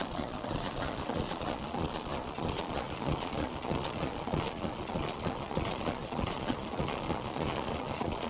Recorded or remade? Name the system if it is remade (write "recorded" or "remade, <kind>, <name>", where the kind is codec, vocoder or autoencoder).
remade, vocoder, Vocos